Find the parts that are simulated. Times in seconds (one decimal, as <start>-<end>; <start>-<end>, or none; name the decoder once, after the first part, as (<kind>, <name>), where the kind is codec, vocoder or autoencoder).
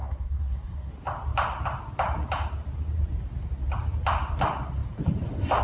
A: 0.0-0.9 (codec, SNAC)